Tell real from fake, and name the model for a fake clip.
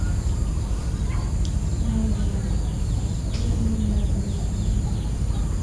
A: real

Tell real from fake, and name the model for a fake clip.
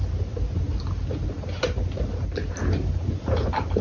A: real